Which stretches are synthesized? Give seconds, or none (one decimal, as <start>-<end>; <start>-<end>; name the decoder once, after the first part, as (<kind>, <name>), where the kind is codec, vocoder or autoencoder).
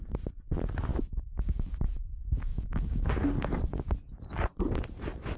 0.9-1.7 (codec, DAC); 2.5-3.1